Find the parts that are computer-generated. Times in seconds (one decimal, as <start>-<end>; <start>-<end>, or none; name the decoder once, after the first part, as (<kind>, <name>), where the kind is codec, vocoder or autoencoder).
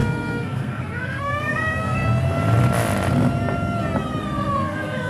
0.0-2.0 (codec, SNAC); 4.2-5.1